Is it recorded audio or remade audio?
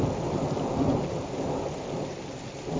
recorded